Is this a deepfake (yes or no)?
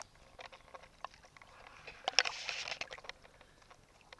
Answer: no